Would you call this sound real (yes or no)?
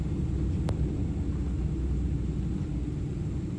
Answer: yes